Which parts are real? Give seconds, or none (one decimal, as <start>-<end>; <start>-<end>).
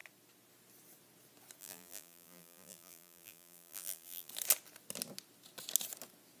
0.0-1.6; 4.3-6.4